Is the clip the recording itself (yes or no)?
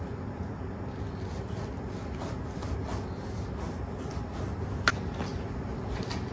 yes